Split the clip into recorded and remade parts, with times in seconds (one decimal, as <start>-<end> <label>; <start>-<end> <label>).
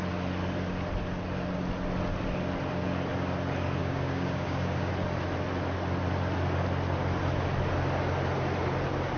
0.0-3.8 recorded; 3.8-4.9 remade; 4.9-9.2 recorded